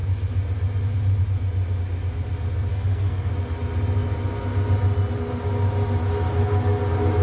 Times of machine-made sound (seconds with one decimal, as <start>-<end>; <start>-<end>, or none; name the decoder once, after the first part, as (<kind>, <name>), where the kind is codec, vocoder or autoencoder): 2.7-3.3 (codec, SNAC)